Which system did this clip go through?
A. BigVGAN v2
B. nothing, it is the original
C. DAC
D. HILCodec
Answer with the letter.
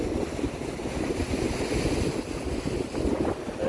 B